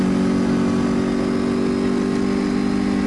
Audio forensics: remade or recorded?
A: recorded